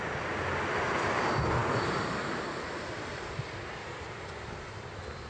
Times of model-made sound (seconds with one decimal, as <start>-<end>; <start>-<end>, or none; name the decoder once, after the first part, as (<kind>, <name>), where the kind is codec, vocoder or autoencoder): none

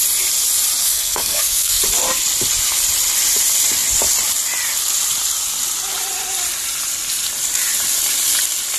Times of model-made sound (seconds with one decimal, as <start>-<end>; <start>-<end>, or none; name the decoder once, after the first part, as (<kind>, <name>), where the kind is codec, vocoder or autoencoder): 0.8-1.8 (codec, SNAC)

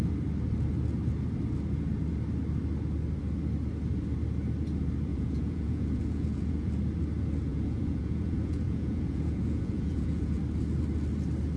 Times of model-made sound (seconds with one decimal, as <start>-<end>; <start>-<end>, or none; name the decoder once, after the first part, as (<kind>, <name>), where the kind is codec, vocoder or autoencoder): 5.1-6.7 (vocoder, Vocos); 7.5-10.4

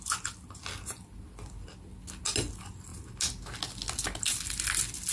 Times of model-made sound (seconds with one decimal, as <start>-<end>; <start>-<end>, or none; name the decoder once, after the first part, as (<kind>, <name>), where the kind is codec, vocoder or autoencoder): none

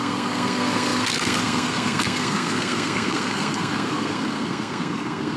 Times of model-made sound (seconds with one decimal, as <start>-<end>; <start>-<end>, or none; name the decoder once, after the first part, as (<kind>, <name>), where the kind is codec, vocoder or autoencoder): 0.0-5.4 (codec, SNAC)

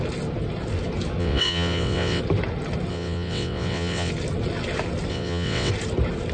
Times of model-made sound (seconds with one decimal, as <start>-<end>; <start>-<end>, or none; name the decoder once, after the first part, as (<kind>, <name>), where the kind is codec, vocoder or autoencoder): 1.2-2.2 (vocoder, WaveNeXt); 2.9-4.1; 5.1-5.7

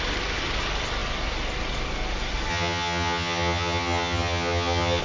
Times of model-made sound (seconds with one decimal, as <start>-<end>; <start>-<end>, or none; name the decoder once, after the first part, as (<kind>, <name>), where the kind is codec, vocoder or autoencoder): 2.5-5.0 (vocoder, HiFi-GAN)

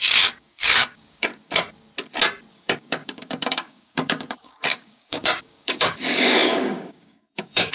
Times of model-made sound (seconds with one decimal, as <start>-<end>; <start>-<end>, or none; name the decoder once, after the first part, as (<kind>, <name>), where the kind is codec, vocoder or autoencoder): 0.0-1.3 (codec, DAC); 2.5-7.7